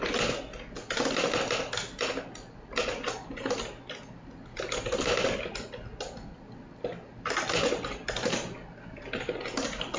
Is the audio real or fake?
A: real